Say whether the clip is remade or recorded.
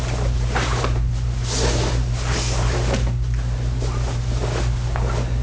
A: recorded